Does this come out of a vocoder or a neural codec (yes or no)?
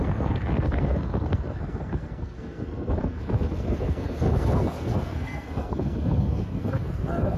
yes